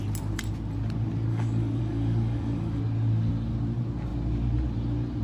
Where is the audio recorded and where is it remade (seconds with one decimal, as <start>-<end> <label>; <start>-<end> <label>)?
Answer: 0.0-1.3 recorded; 1.3-2.8 remade; 2.8-5.2 recorded